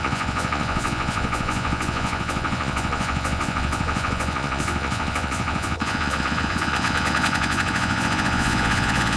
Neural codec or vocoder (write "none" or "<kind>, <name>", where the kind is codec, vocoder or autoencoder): vocoder, Vocos